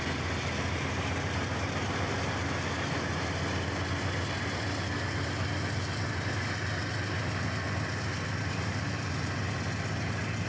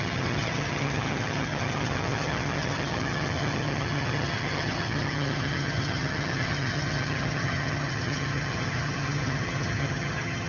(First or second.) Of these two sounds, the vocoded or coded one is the second